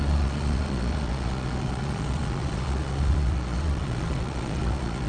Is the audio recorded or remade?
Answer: remade